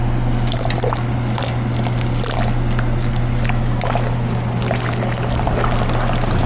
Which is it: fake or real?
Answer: real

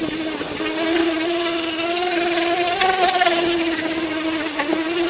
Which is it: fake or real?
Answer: real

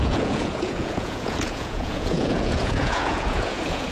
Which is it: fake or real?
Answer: fake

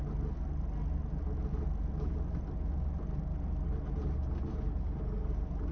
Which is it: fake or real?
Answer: real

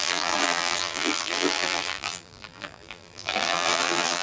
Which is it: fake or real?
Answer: fake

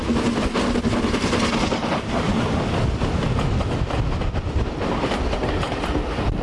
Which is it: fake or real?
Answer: real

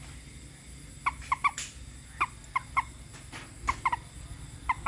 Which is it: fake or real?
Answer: real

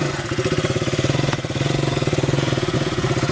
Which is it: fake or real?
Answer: fake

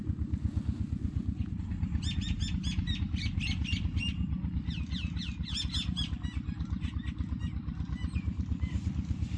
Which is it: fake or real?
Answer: real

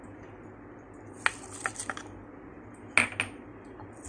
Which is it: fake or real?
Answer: real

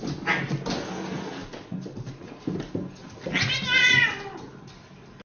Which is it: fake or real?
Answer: real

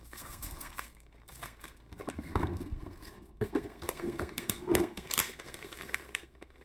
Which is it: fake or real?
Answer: fake